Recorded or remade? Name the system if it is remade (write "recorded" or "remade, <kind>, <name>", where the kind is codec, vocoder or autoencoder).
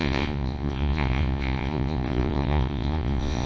remade, vocoder, Vocos